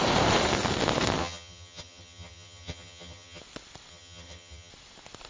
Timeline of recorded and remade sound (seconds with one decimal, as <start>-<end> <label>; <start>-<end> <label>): 0.0-1.2 recorded; 1.2-3.4 remade; 3.4-3.9 recorded; 3.9-4.7 remade; 4.7-5.3 recorded